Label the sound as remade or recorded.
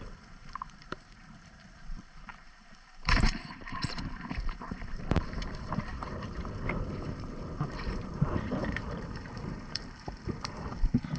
remade